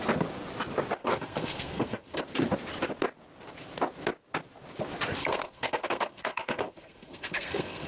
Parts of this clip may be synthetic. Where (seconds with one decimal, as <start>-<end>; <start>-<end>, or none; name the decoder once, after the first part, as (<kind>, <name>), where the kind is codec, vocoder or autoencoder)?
1.0-2.2 (codec, SNAC); 5.2-7.9